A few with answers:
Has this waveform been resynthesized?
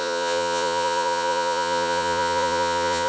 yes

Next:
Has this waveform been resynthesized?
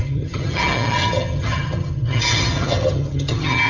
yes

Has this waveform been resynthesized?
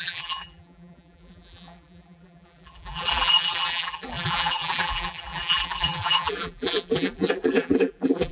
yes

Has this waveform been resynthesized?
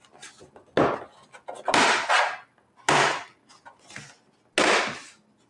no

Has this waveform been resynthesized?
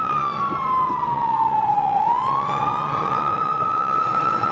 yes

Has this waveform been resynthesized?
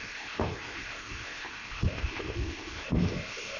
yes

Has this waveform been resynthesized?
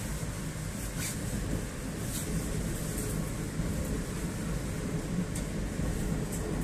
no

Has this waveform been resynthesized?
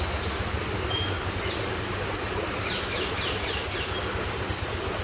no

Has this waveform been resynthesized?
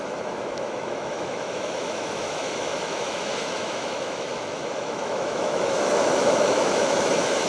yes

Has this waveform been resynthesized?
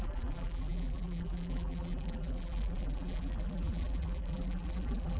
yes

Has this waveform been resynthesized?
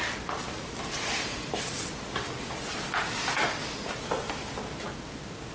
no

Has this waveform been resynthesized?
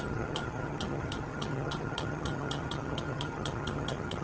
yes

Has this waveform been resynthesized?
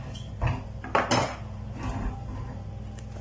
no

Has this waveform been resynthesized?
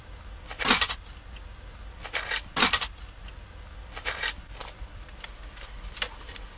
yes